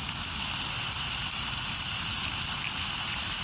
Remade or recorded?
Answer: recorded